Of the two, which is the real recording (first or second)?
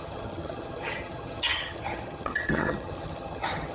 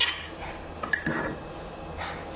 second